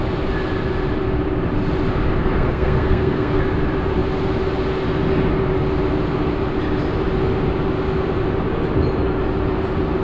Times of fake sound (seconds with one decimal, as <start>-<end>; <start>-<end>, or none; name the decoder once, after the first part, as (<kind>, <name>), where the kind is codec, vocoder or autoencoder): 2.2-3.4 (codec, SNAC)